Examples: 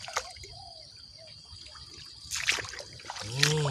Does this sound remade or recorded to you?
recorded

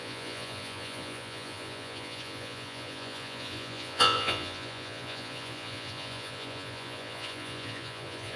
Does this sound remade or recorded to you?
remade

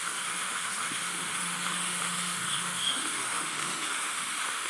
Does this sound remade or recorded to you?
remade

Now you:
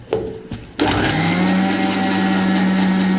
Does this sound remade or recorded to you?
recorded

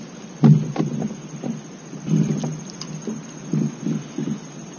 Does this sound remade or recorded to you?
recorded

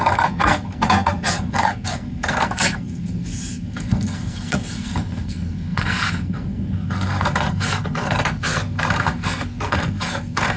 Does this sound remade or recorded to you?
remade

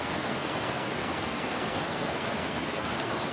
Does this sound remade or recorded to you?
remade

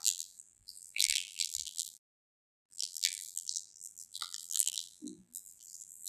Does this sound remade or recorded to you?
remade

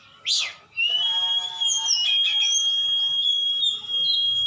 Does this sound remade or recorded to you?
recorded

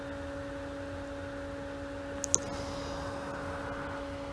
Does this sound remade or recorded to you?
recorded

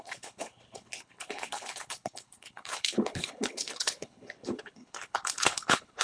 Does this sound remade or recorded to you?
remade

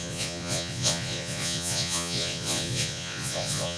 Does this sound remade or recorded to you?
remade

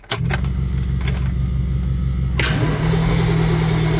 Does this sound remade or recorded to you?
recorded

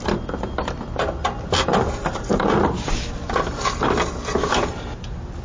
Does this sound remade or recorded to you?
recorded